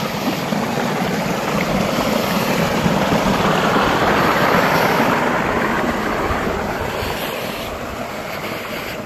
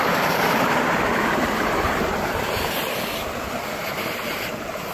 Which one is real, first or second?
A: first